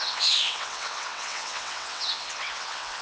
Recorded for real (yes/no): no